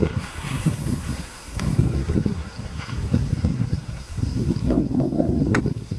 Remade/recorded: remade